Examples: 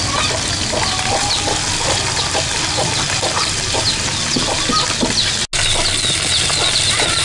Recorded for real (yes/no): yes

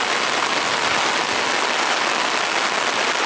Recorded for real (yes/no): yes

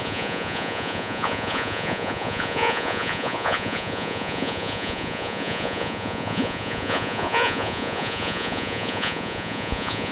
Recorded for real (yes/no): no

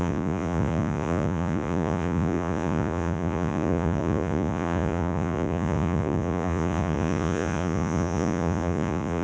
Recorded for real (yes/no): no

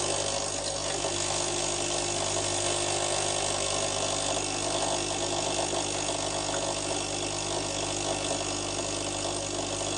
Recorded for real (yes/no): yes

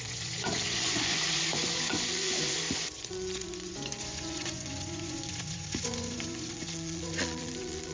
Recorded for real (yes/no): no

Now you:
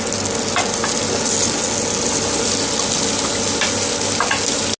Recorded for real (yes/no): yes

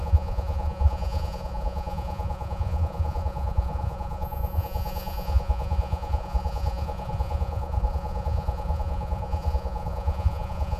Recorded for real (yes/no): no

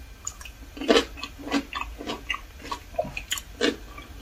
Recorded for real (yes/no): yes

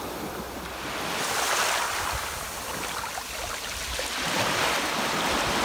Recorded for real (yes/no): yes